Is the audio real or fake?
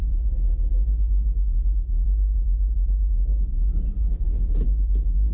real